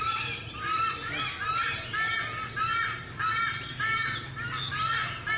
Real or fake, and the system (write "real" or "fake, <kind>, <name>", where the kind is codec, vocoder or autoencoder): real